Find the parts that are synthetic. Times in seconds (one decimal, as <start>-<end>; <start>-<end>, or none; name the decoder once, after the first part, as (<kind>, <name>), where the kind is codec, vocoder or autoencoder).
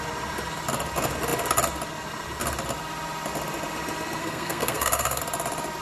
4.2-5.2 (codec, SNAC)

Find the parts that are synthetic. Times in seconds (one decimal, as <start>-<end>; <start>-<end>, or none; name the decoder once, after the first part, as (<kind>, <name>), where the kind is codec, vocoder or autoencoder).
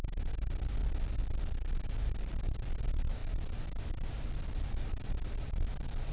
0.8-2.8 (vocoder, BigVGAN v2); 3.2-6.1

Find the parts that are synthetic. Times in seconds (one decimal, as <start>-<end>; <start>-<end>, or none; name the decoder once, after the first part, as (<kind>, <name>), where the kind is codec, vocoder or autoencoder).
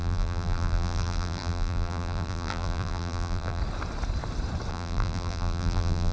0.0-3.6 (vocoder, BigVGAN v2); 4.7-6.1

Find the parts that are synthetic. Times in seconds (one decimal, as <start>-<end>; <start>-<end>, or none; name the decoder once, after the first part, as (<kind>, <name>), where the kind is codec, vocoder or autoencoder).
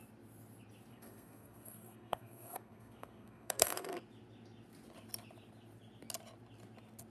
0.9-4.0 (codec, SNAC)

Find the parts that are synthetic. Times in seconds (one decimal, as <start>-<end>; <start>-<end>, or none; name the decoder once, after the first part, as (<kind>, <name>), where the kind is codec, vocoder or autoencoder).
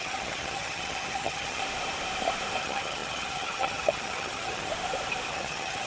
0.0-1.6 (vocoder, HiFi-GAN); 2.6-4.7; 5.3-5.9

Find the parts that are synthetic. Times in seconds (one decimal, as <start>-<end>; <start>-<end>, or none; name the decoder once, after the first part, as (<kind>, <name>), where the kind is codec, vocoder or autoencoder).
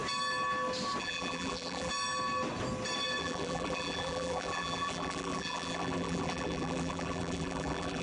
1.0-1.9 (vocoder, BigVGAN v2); 3.2-8.0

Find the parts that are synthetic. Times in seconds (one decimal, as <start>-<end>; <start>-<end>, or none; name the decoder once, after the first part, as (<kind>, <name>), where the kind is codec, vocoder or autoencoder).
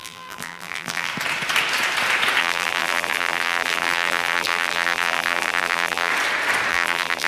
0.0-1.1 (vocoder, BigVGAN v2); 2.4-6.1; 6.7-7.3